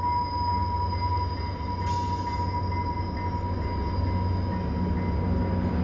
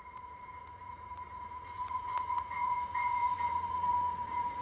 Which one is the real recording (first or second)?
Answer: first